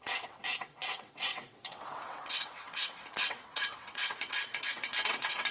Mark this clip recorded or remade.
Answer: remade